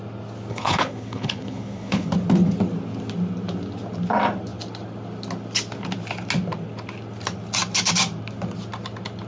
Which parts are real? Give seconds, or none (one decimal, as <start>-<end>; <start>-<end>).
0.0-0.5; 2.1-9.3